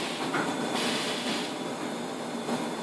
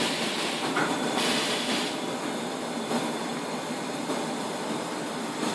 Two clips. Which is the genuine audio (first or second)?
first